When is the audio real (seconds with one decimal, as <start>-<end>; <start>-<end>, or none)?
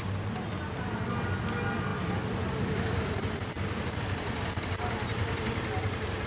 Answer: 0.0-6.3